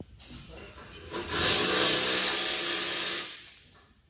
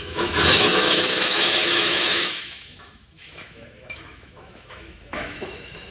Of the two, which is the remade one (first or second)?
second